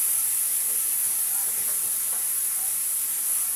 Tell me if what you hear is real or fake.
real